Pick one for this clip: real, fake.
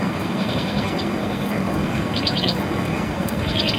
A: fake